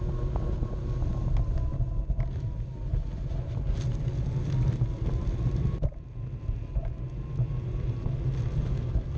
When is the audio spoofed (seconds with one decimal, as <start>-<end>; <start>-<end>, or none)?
none